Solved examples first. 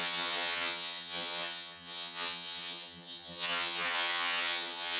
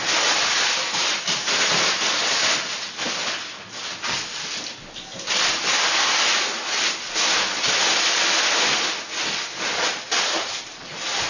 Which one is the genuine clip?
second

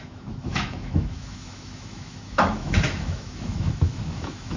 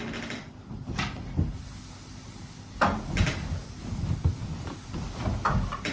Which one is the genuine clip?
second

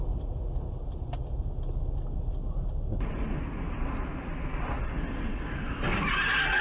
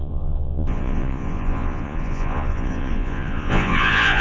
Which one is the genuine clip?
first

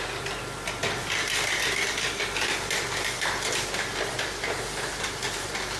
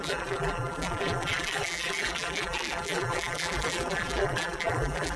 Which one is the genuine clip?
first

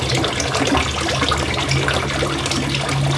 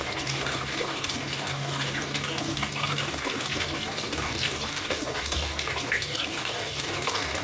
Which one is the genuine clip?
first